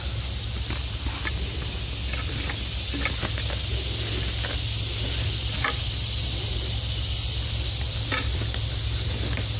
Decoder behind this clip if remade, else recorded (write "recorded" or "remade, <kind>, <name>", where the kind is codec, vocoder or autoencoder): recorded